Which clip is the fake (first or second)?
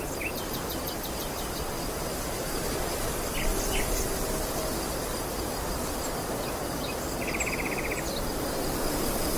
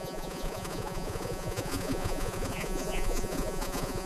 second